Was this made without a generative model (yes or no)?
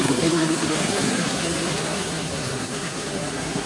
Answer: no